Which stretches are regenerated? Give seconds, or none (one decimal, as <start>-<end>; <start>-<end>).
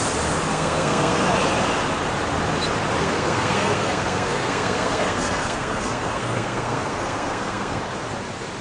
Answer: 0.5-1.2; 3.0-7.8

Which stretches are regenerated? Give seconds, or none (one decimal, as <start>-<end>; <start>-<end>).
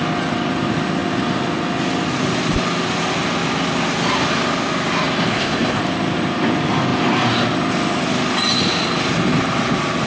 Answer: 5.3-5.8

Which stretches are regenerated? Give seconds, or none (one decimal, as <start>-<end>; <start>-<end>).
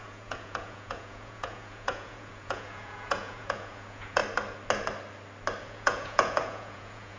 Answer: 0.0-4.2; 5.6-7.2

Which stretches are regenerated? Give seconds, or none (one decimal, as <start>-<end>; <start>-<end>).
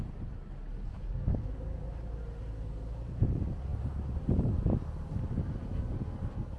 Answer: 0.9-1.8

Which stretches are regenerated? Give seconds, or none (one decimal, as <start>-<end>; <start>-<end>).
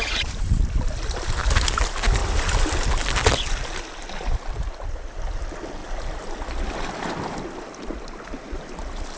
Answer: none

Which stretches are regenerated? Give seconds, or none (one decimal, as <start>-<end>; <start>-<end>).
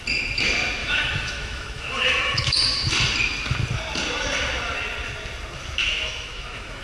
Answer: 0.8-2.9; 5.8-6.8